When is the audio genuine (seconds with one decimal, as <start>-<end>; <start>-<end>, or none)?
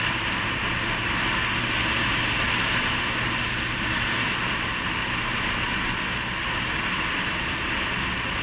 0.0-8.4